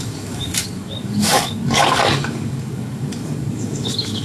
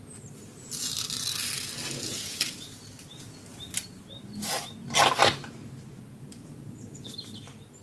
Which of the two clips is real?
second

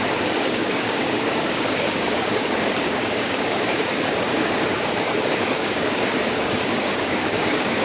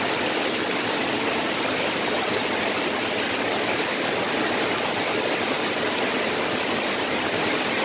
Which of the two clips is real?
second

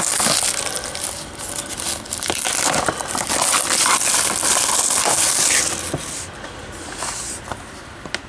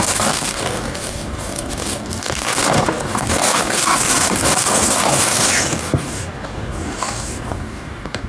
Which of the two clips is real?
first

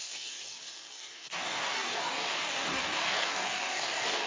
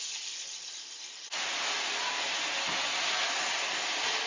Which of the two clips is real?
second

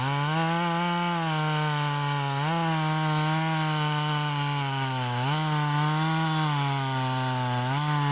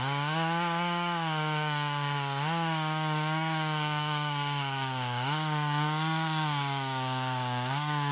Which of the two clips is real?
first